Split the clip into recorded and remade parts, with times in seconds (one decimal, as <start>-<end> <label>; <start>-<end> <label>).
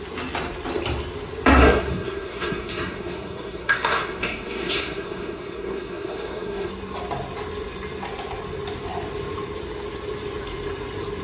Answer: 0.0-1.5 recorded; 1.5-6.7 remade; 6.7-11.2 recorded